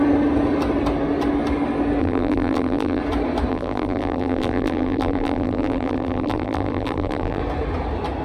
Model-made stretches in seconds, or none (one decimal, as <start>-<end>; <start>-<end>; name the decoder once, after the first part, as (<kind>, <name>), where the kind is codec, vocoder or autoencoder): 2.0-3.0 (vocoder, BigVGAN v2); 3.5-7.4